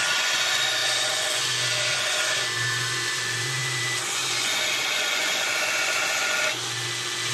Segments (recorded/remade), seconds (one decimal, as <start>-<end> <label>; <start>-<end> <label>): 0.0-7.3 remade